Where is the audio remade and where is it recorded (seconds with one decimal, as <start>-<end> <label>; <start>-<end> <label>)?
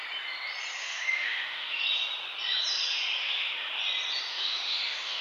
0.0-0.8 recorded; 0.8-1.8 remade; 1.8-3.2 recorded; 3.2-3.8 remade; 3.8-4.3 recorded; 4.3-5.2 remade